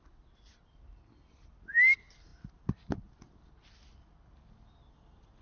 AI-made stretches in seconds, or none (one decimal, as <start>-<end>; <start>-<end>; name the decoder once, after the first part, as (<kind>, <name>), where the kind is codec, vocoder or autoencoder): none